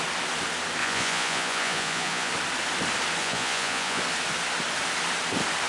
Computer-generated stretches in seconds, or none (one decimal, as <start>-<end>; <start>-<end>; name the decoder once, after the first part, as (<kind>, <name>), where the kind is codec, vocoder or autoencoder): 0.8-2.3 (vocoder, Vocos); 3.2-4.0